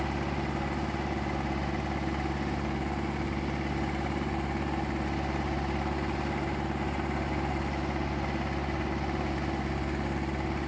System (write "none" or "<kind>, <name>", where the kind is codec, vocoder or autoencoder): none